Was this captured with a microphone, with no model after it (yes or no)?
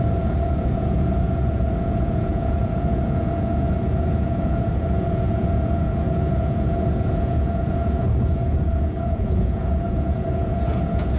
no